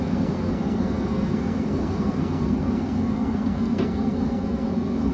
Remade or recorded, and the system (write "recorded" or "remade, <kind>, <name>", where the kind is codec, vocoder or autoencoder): remade, codec, SNAC